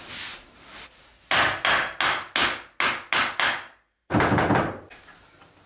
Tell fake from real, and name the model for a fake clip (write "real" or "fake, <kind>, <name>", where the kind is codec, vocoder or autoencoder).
real